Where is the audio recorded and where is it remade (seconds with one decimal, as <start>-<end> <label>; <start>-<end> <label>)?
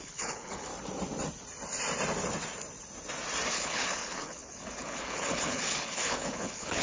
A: 0.0-0.7 remade; 0.7-3.5 recorded; 3.5-6.8 remade